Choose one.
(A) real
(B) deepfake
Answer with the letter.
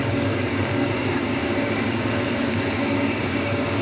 B